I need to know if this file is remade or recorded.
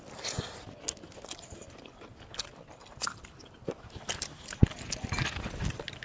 recorded